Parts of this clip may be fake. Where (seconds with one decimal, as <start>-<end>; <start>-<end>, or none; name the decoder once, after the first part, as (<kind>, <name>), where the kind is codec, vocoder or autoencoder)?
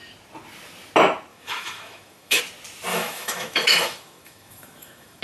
1.3-2.4 (autoencoder, DAC-VAE); 2.9-5.2